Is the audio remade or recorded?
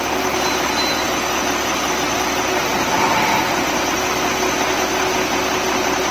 recorded